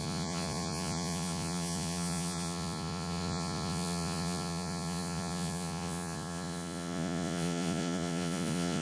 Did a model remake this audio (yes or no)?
yes